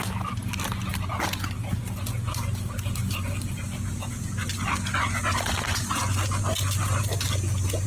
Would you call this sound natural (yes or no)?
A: yes